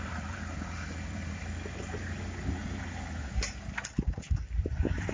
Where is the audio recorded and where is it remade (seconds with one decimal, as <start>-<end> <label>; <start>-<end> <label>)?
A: 0.0-2.6 remade; 2.6-4.6 recorded; 4.6-5.1 remade